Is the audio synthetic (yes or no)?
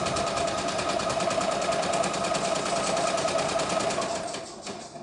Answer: no